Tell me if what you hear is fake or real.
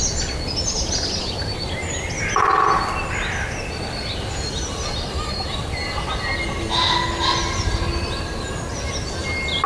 real